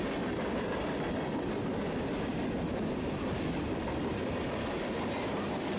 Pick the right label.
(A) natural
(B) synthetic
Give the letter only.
A